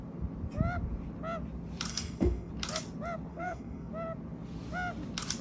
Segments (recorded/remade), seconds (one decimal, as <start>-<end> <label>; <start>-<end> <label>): 0.0-1.9 recorded; 1.9-2.5 remade; 2.5-3.3 recorded; 3.3-3.9 remade; 3.9-5.4 recorded